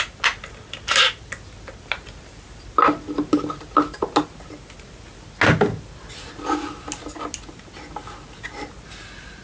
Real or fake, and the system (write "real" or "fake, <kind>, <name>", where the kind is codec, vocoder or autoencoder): real